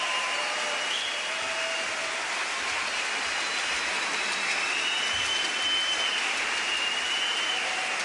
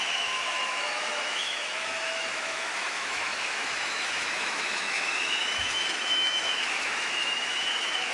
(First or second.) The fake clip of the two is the second